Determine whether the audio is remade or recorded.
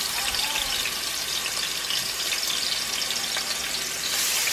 recorded